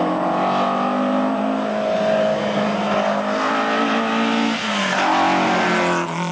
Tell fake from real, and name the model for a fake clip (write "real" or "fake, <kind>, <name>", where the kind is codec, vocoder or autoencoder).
real